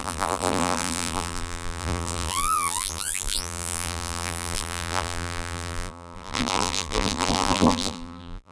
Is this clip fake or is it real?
fake